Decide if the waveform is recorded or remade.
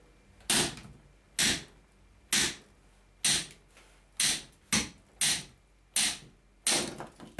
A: recorded